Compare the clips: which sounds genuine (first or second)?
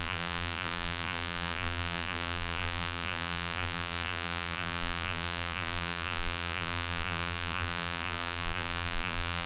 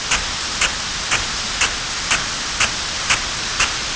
second